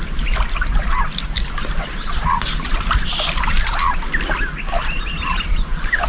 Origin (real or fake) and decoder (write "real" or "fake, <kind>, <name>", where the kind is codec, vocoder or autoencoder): real